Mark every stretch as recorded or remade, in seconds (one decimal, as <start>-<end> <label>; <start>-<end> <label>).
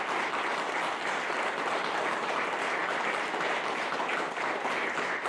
0.0-5.3 recorded